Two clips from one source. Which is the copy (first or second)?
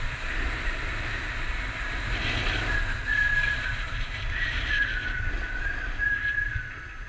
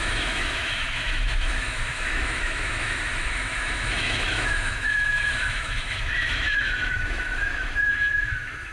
second